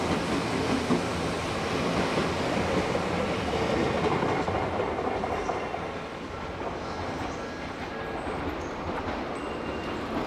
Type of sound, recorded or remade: recorded